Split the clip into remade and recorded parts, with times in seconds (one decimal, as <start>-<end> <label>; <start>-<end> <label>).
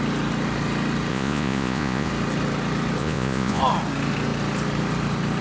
0.0-1.1 recorded; 1.1-2.1 remade; 2.1-3.0 recorded; 3.0-3.6 remade; 3.6-5.4 recorded